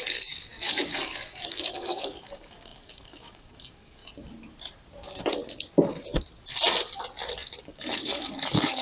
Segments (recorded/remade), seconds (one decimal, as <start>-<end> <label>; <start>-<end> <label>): 0.0-4.0 remade; 4.0-7.6 recorded; 7.6-8.8 remade